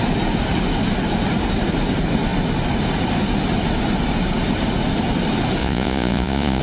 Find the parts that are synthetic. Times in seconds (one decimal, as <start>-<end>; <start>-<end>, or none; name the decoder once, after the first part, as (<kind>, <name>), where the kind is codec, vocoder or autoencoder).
5.6-6.6 (vocoder, Vocos)